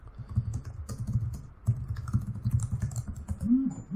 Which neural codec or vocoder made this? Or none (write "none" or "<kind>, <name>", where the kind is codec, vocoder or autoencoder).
none